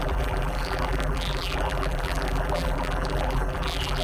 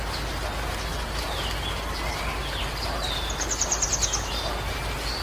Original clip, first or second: second